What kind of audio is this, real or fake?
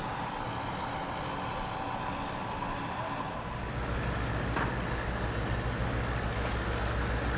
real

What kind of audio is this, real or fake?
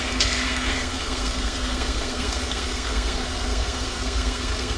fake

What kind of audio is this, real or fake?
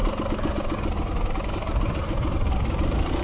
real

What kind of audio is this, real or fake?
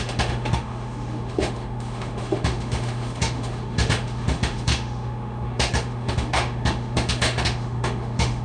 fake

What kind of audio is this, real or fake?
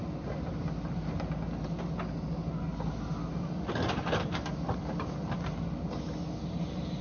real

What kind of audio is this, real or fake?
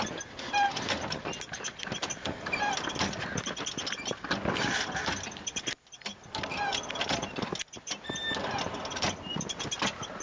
real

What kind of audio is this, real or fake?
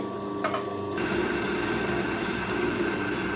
real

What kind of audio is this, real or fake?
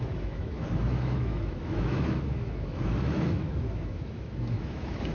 fake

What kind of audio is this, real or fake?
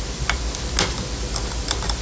real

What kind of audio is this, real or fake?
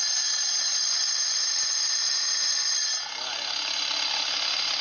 real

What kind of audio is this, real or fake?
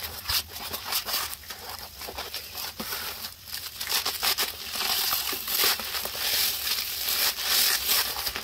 fake